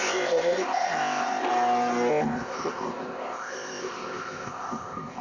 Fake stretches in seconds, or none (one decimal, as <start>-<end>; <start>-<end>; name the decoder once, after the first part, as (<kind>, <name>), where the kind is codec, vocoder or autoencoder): 0.0-1.5 (codec, ZipCodec); 2.1-5.2